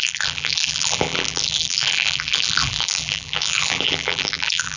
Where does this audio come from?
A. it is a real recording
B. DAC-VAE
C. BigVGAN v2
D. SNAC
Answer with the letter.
C